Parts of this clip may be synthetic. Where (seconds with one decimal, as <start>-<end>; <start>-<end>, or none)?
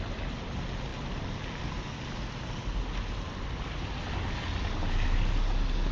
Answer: none